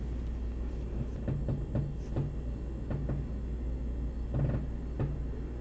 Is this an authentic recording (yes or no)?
yes